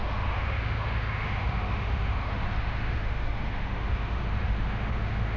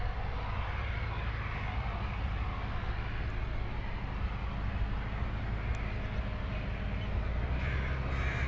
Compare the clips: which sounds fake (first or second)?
first